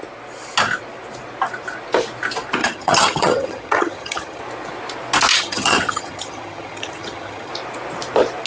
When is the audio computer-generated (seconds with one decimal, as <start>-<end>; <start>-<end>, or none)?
2.6-4.4; 5.3-7.5